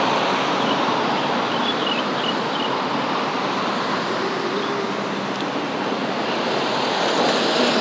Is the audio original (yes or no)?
yes